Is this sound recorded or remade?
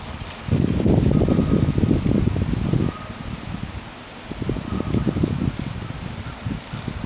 recorded